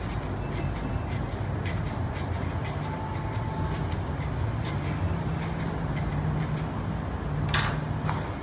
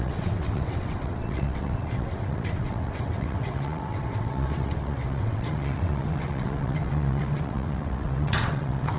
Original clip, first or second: first